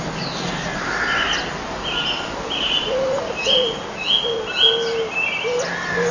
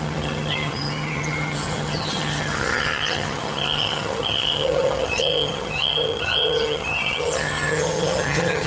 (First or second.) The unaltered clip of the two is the first